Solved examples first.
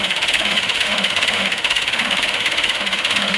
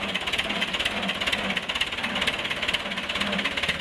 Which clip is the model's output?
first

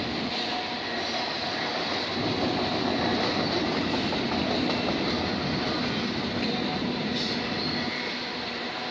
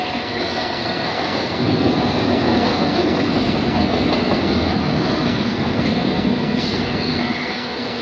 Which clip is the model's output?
second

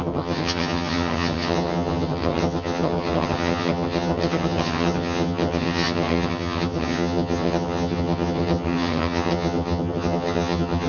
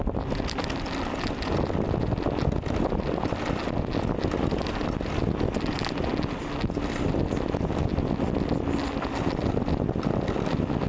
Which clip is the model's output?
first